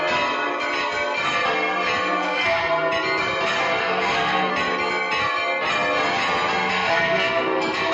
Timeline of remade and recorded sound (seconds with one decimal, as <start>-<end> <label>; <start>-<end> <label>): 0.0-2.1 recorded; 2.1-2.7 remade; 2.7-3.8 recorded; 3.8-4.5 remade; 4.5-6.7 recorded; 6.7-7.9 remade